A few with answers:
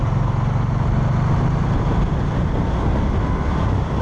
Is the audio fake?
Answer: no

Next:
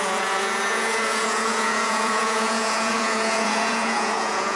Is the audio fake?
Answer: yes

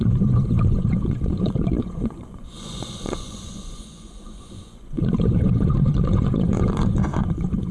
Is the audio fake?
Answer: yes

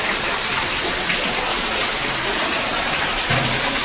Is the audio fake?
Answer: no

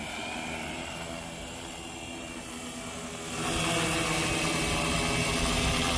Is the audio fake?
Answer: no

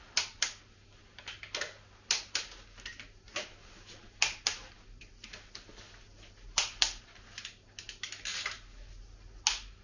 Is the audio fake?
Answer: no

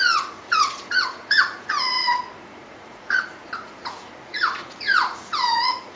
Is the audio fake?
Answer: yes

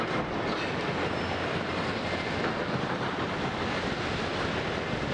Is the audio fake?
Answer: no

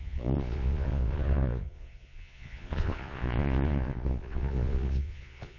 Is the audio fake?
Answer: yes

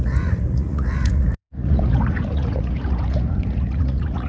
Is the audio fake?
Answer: yes